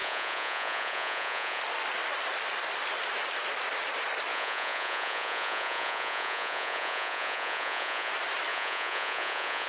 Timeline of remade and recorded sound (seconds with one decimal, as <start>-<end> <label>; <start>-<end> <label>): 0.0-1.6 remade; 1.6-4.3 recorded; 4.3-8.1 remade; 8.1-8.5 recorded; 8.5-9.7 remade